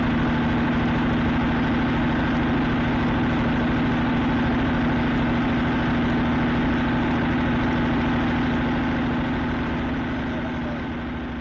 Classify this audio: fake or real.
real